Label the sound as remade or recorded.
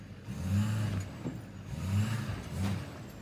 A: recorded